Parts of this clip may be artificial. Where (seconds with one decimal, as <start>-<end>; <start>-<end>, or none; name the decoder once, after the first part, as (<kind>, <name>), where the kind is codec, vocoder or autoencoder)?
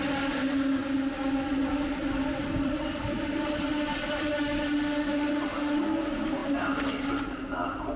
2.0-4.3 (vocoder, BigVGAN v2)